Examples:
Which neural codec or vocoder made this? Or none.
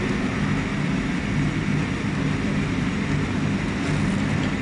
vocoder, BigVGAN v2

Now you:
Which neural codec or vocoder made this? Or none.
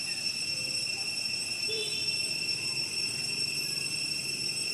vocoder, BigVGAN v2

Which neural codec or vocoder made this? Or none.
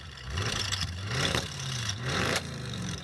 vocoder, BigVGAN v2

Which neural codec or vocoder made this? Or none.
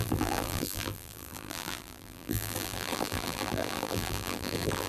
vocoder, BigVGAN v2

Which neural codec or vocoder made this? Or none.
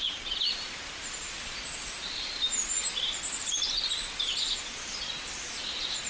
vocoder, BigVGAN v2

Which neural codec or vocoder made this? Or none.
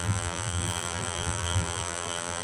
vocoder, BigVGAN v2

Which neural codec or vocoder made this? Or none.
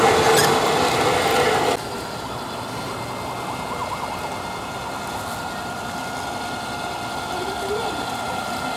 none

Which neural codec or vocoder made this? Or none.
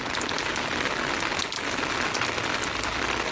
none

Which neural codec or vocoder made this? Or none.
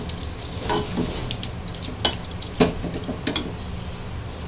none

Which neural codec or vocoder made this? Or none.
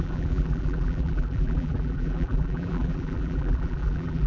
vocoder, BigVGAN v2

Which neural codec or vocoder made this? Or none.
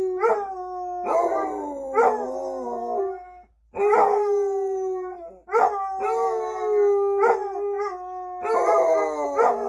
none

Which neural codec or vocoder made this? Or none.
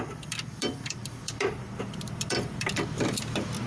vocoder, BigVGAN v2